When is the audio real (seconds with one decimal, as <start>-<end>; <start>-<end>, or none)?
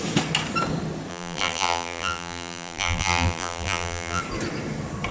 0.0-1.1; 4.2-5.1